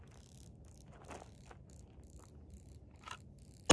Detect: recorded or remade recorded